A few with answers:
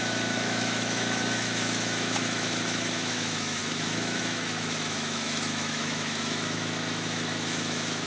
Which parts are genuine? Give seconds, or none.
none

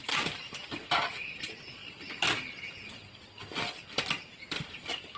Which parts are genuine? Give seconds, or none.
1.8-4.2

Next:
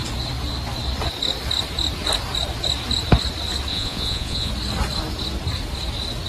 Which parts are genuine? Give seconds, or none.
0.0-3.7; 4.5-6.3

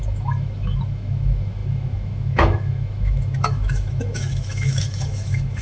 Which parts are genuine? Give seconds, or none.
none